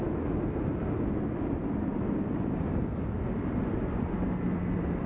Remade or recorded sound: recorded